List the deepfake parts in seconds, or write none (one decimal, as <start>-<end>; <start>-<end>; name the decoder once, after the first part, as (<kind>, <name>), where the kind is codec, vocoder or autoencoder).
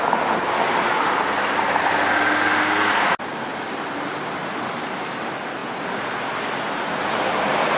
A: none